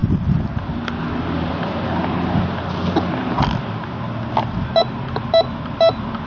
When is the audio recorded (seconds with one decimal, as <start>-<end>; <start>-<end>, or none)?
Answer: 0.0-6.3